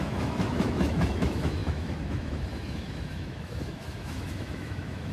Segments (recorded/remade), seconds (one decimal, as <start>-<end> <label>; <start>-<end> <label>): 0.0-5.1 remade